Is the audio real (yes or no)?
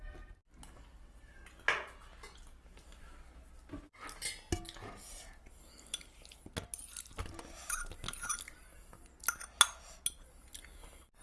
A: yes